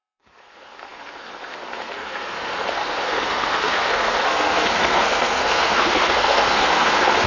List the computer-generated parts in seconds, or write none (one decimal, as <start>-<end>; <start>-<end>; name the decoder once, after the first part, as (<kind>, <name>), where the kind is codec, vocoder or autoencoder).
0.0-7.3 (codec, SNAC)